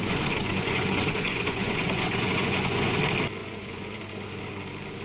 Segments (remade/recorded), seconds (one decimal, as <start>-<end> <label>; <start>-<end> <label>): 0.0-3.0 remade; 3.0-3.4 recorded; 3.4-4.0 remade; 4.0-5.0 recorded